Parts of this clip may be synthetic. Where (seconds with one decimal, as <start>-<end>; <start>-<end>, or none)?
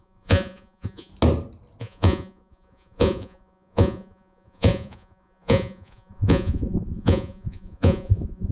0.0-1.1; 1.8-8.5